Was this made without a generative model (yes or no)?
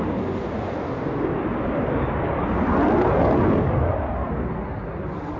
yes